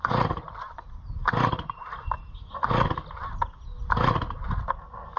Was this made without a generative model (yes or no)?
yes